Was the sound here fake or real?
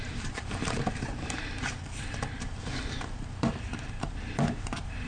fake